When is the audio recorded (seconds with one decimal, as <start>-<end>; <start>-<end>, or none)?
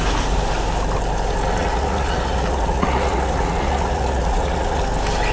0.0-1.6; 4.8-5.3